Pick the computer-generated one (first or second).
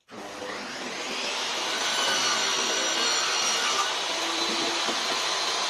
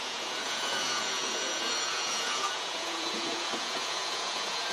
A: second